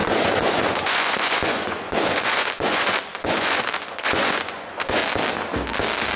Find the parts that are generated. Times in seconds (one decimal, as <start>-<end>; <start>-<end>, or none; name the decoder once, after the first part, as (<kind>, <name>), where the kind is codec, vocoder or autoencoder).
0.0-5.0 (vocoder, Vocos)